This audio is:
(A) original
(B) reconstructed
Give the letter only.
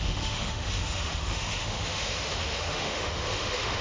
B